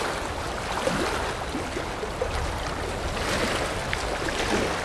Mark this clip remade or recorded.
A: recorded